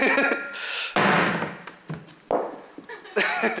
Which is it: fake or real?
real